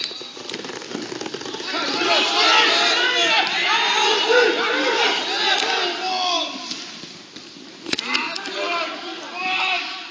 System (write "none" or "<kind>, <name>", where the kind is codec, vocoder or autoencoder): none